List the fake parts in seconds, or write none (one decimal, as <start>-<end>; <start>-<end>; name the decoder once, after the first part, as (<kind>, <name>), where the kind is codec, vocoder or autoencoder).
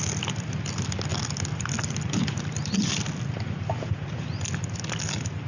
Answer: none